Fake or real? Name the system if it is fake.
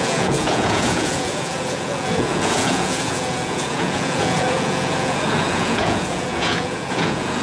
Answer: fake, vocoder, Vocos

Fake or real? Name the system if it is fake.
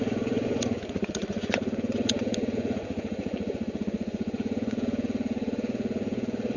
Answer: fake, vocoder, Vocos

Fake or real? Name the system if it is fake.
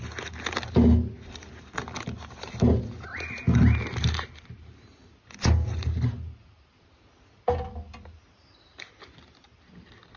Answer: real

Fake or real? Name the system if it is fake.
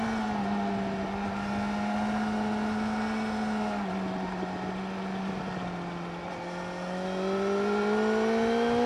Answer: real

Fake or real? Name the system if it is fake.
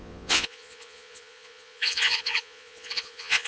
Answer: fake, vocoder, Vocos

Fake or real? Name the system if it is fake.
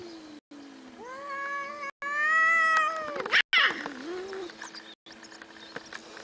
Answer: real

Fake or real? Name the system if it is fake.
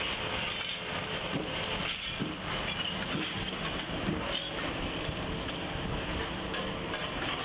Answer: real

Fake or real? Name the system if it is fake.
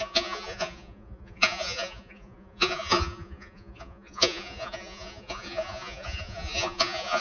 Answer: fake, vocoder, Vocos